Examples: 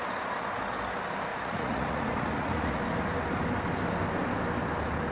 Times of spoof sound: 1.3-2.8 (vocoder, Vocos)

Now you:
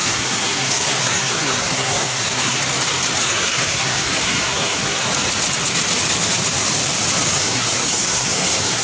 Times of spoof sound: 0.0-2.6 (codec, SNAC); 3.2-5.1; 7.4-8.8

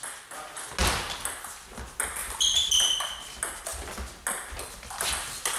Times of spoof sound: none

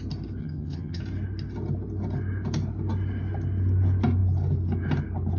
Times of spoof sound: 0.4-1.0 (vocoder, HiFi-GAN)

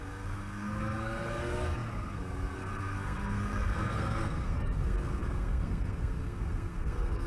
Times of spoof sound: 0.0-7.3 (codec, SNAC)

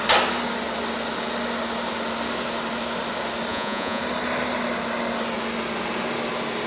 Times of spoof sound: 3.5-4.0 (vocoder, Vocos)

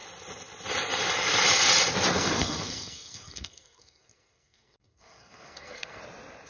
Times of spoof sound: 2.1-6.0 (codec, SNAC)

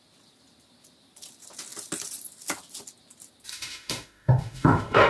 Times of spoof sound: 3.5-5.1 (autoencoder, DAC-VAE)